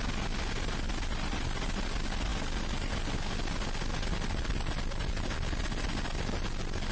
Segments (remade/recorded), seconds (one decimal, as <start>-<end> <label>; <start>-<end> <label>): 0.0-6.9 recorded